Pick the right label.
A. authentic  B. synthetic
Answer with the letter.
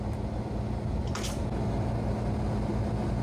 A